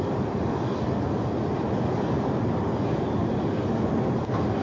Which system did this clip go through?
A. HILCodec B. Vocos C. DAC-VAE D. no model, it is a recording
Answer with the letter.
D